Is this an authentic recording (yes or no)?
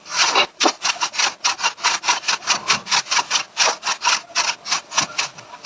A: yes